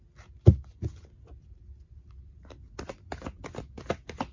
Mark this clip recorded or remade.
recorded